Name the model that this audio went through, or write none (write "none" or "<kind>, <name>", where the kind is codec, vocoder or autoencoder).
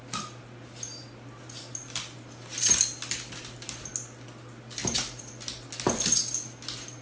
none